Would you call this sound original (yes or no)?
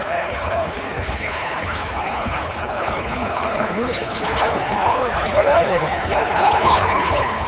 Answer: no